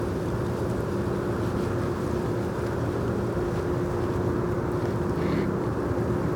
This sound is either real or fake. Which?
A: real